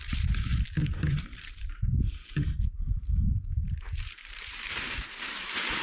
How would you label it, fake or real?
fake